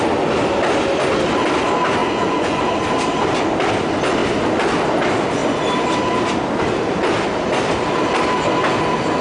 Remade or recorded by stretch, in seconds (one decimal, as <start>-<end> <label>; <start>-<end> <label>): 0.0-2.0 recorded; 2.0-2.6 remade; 2.6-9.2 recorded